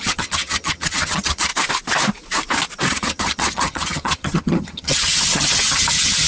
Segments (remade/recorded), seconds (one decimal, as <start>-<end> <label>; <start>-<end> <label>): 0.0-1.5 remade; 1.5-2.9 recorded; 2.9-6.3 remade